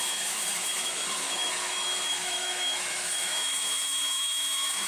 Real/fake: fake